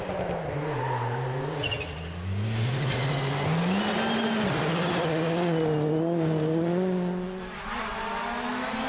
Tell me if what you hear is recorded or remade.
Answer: recorded